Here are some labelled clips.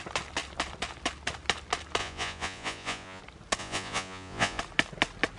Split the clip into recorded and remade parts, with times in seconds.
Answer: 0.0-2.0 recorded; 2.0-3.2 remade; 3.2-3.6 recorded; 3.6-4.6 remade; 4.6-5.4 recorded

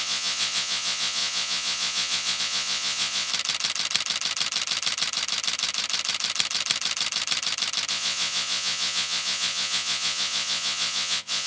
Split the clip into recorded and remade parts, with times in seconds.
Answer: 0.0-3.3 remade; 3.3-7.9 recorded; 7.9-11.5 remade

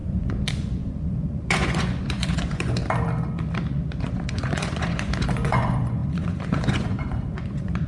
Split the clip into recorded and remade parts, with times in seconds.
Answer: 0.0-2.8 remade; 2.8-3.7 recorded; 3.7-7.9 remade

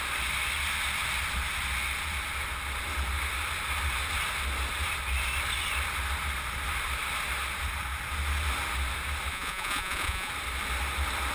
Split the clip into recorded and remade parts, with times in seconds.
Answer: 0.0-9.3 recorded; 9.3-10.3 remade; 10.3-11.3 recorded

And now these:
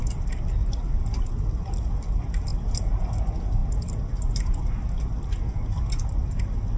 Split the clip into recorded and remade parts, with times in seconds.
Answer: 0.0-6.8 recorded

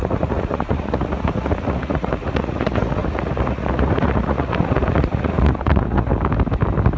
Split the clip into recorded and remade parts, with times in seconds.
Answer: 0.0-6.1 remade; 6.1-7.0 recorded

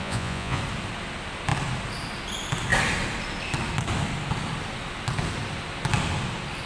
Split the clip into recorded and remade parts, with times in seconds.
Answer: 0.0-0.6 remade; 0.6-6.7 recorded

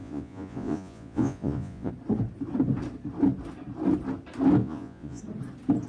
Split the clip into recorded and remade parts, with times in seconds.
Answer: 0.0-1.9 remade; 1.9-4.6 recorded; 4.6-5.2 remade; 5.2-5.9 recorded